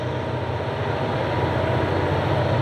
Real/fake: real